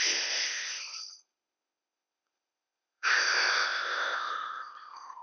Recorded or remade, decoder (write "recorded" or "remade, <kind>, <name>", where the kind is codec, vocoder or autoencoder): remade, codec, ZipCodec